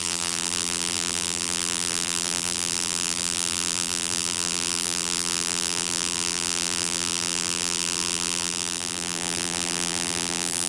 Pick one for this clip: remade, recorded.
remade